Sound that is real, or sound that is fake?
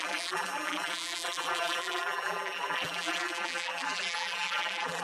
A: fake